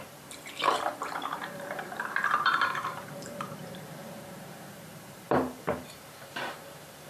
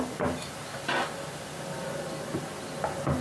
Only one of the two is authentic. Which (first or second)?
second